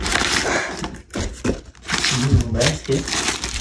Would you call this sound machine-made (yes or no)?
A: no